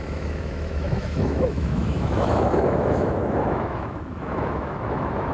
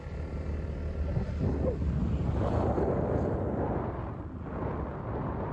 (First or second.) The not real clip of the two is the first